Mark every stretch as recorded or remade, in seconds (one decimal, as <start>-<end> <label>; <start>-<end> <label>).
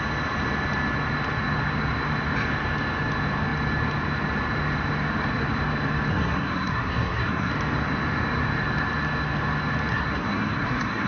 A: 0.0-6.1 recorded; 6.1-7.5 remade; 7.5-9.9 recorded; 9.9-11.1 remade